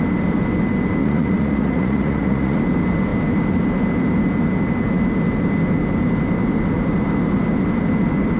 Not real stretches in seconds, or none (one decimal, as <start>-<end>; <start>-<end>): 1.0-2.6